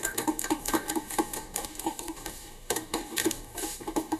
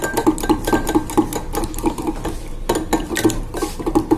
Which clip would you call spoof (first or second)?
first